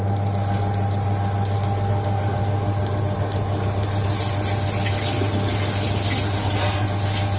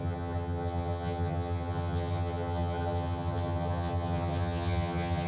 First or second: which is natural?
first